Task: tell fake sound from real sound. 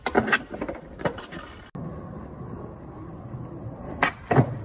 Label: real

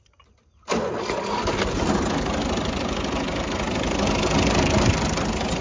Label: real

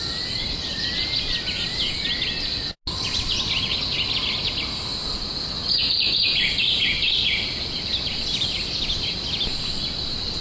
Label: real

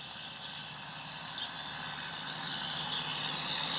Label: real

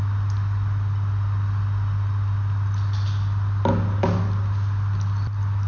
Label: real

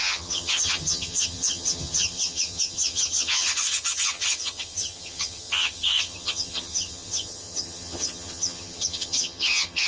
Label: fake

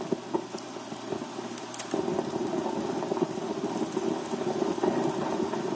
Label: real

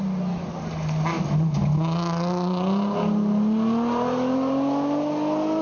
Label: real